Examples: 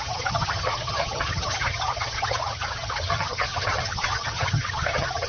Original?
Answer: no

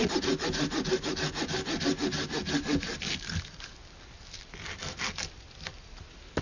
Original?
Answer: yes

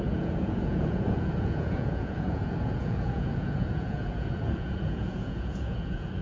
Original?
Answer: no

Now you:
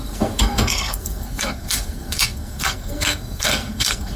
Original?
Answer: no